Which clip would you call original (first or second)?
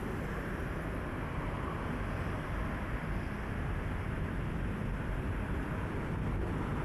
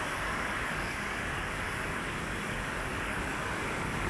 first